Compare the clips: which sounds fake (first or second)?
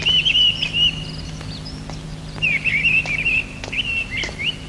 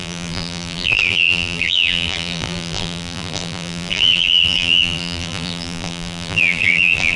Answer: second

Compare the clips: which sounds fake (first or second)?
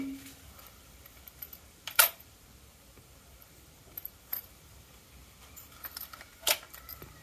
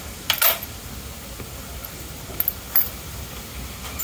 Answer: first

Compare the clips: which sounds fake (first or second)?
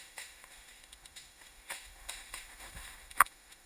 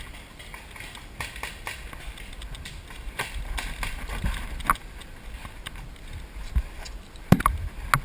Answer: first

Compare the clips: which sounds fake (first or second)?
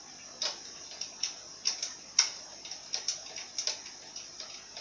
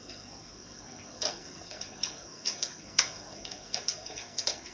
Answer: second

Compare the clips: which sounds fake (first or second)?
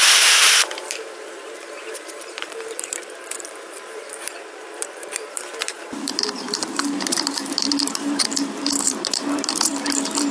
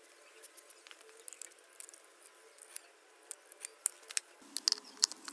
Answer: first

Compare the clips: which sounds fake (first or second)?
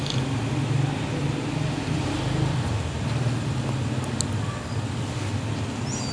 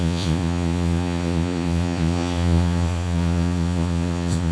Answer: second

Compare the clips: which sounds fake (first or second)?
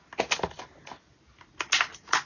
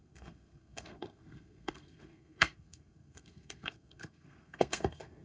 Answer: second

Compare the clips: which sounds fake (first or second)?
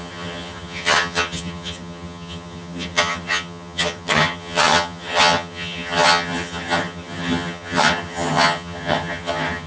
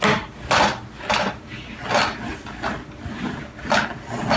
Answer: first